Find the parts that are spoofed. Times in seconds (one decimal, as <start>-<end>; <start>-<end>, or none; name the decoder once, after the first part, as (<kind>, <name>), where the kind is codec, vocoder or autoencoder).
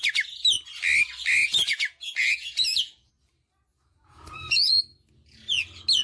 1.4-3.1 (vocoder, Vocos); 3.7-4.8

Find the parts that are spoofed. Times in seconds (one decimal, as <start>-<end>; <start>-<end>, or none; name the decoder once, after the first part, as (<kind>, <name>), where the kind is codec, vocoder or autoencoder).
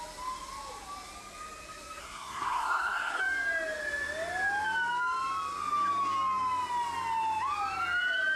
2.0-3.2 (codec, SNAC)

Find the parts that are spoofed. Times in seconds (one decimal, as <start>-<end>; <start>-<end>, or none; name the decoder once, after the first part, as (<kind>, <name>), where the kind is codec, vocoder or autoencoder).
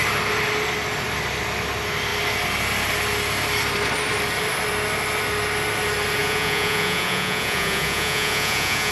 6.2-8.9 (vocoder, Vocos)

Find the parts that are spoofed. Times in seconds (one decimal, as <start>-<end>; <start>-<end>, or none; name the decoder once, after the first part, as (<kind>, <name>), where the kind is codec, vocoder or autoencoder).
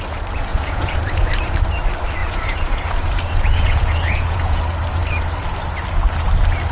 0.5-1.3 (vocoder, Vocos); 2.2-4.6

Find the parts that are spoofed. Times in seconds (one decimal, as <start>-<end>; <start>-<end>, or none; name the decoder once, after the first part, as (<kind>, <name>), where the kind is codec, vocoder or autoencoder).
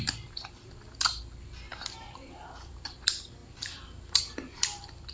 0.0-5.1 (vocoder, BigVGAN v2)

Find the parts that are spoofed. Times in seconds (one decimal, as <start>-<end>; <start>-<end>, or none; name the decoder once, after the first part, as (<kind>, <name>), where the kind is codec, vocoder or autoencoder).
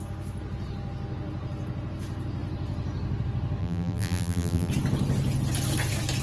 3.6-4.7 (vocoder, BigVGAN v2)